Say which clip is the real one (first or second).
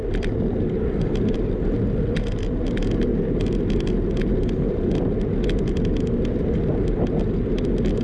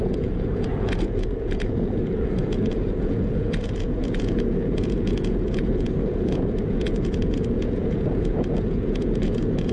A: first